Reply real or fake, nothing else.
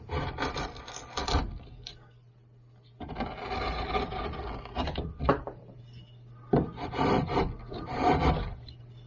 real